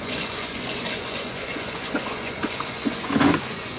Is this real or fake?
fake